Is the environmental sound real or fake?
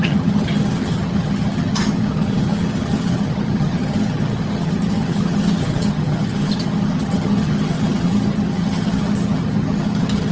fake